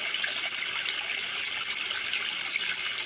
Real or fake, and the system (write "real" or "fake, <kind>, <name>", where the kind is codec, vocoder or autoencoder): real